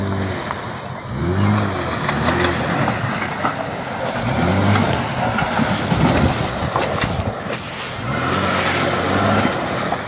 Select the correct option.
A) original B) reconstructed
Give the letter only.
A